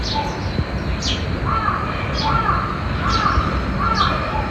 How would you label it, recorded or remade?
recorded